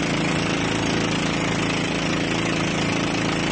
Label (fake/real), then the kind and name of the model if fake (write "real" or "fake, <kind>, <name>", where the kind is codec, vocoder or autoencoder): real